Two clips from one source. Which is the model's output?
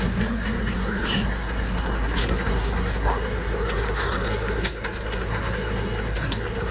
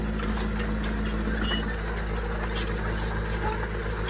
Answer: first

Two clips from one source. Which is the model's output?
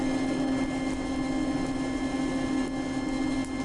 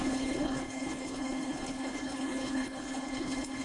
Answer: second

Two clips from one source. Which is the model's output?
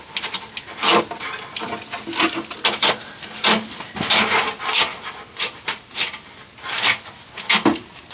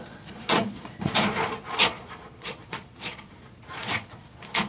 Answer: second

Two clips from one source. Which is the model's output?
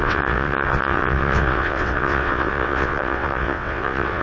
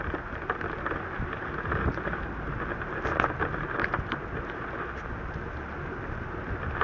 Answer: first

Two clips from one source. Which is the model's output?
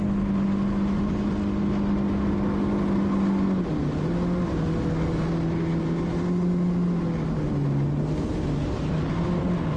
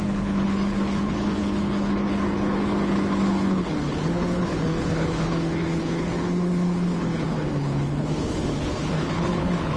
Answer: second